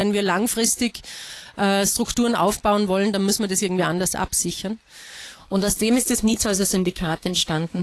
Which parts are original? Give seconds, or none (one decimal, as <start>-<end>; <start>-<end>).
0.0-5.4